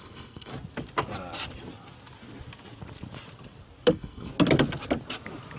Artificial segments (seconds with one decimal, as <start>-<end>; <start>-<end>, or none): 0.0-0.5; 3.9-4.3